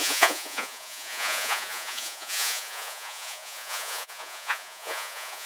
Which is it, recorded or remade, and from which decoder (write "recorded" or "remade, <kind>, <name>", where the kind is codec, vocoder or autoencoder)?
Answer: remade, vocoder, Vocos